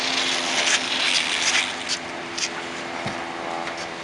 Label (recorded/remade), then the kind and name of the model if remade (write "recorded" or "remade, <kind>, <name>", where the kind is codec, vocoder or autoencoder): recorded